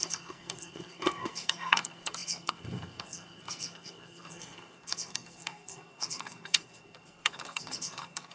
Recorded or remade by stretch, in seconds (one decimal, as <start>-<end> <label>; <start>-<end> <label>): 0.0-8.3 remade

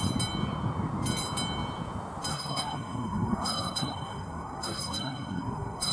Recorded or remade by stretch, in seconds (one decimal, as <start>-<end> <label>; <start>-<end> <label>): 0.0-2.3 recorded; 2.3-5.9 remade